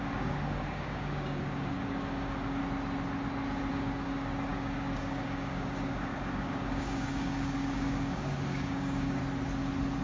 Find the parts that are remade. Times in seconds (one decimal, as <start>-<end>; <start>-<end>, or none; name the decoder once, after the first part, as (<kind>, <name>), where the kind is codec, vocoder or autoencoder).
0.0-2.6 (codec, DAC); 3.7-9.2